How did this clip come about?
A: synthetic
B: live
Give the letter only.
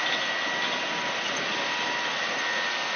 B